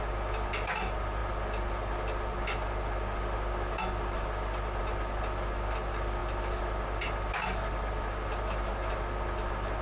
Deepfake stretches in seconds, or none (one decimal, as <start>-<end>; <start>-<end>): none